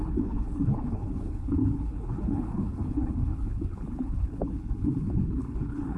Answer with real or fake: fake